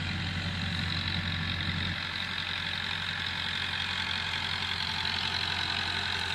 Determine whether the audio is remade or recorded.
recorded